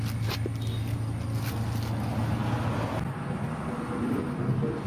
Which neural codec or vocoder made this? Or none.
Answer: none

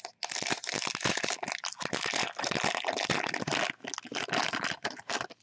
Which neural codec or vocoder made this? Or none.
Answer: none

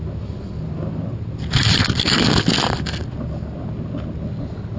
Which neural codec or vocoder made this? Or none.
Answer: none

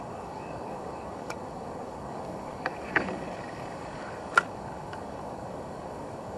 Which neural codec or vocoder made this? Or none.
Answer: codec, DAC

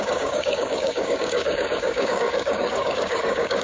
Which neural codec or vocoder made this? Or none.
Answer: codec, DAC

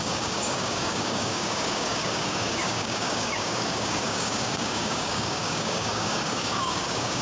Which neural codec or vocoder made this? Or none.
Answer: codec, DAC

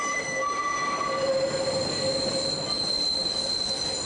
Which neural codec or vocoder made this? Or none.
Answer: none